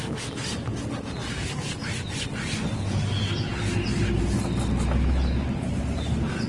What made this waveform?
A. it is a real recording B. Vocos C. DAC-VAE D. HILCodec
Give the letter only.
A